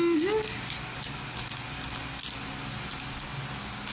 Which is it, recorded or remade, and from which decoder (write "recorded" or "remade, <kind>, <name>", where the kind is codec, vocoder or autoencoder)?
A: recorded